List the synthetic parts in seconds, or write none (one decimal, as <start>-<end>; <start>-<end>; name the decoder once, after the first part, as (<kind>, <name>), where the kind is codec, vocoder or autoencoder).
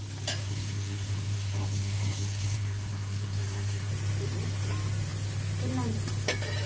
0.4-3.9 (codec, SNAC)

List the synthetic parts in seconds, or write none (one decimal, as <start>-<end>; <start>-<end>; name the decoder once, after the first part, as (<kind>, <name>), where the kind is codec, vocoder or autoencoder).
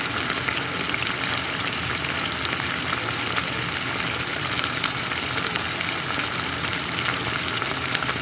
0.4-1.6 (vocoder, BigVGAN v2); 4.3-5.4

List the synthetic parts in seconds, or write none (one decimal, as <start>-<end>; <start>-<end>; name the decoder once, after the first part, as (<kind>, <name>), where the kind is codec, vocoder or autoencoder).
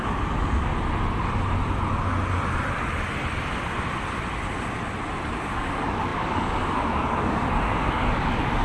0.0-0.7 (codec, DAC); 5.4-8.6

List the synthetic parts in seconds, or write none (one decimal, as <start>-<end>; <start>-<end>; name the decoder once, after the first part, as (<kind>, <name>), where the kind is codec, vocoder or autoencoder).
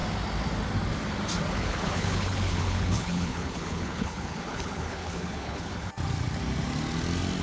1.5-5.9 (codec, HILCodec)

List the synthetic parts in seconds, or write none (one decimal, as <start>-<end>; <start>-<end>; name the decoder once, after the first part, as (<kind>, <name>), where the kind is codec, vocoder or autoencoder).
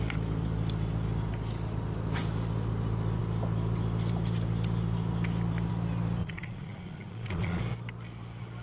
6.2-7.6 (vocoder, Vocos)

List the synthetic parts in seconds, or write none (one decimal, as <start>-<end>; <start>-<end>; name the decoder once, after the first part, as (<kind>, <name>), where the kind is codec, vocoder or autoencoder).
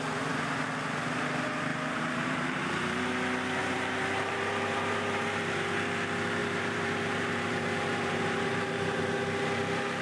1.7-3.1 (vocoder, BigVGAN v2); 3.6-5.5; 6.4-9.0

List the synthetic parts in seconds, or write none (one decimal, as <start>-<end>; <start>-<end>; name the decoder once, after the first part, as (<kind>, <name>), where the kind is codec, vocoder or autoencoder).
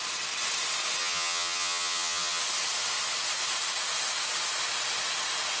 1.0-2.4 (vocoder, HiFi-GAN)